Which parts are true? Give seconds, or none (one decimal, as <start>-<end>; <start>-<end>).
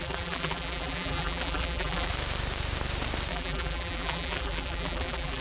2.1-3.3